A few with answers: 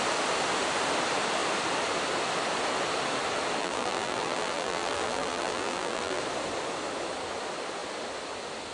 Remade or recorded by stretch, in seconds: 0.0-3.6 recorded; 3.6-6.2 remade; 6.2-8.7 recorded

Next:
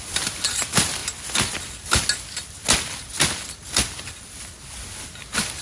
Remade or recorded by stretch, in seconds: 0.0-5.6 recorded

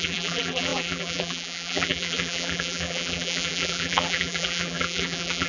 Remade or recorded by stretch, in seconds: 0.0-5.5 remade